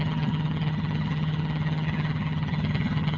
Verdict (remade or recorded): remade